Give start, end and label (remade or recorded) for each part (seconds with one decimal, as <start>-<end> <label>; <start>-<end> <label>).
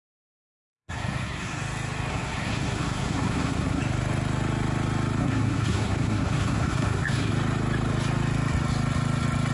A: 0.0-1.6 remade; 1.6-2.1 recorded; 2.1-3.8 remade; 3.8-5.2 recorded; 5.2-7.3 remade; 7.3-9.5 recorded